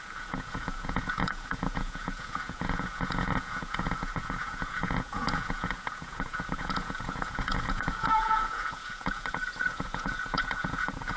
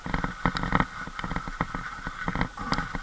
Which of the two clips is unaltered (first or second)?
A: second